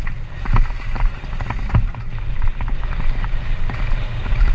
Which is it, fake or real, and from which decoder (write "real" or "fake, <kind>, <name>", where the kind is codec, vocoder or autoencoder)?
real